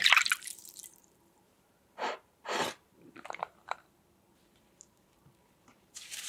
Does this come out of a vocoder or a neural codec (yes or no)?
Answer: yes